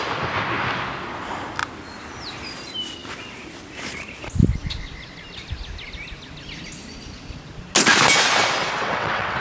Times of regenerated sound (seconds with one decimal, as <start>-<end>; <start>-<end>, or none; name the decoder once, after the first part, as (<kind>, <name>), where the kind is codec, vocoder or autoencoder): 8.6-9.4 (vocoder, WaveNeXt)